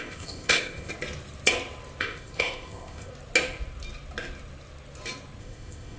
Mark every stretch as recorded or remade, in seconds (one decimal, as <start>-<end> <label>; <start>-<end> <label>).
0.0-0.9 remade; 0.9-2.0 recorded; 2.0-3.1 remade; 3.1-5.4 recorded; 5.4-6.0 remade